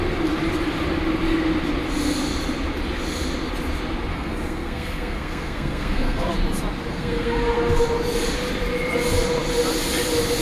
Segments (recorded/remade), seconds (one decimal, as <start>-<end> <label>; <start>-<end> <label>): 0.0-4.1 recorded; 4.1-6.3 remade; 6.3-6.9 recorded; 6.9-7.8 remade; 7.8-10.4 recorded